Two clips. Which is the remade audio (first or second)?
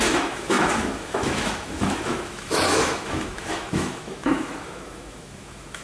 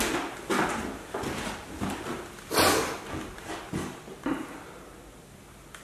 first